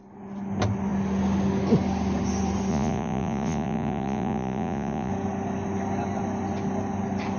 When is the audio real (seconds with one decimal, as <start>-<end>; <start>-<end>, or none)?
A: 0.0-2.7; 5.1-7.4